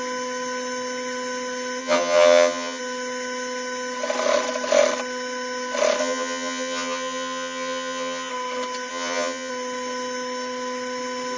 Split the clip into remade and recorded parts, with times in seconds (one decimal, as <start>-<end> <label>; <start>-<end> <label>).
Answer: 0.0-1.8 recorded; 1.8-2.8 remade; 2.8-6.0 recorded; 6.0-8.3 remade; 8.3-8.9 recorded; 8.9-9.5 remade; 9.5-11.4 recorded